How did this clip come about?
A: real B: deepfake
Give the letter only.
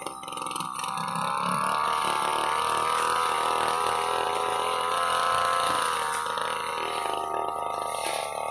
A